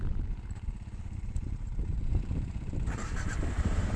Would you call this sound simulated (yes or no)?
yes